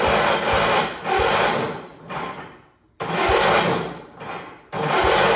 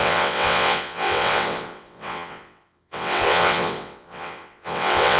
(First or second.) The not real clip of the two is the second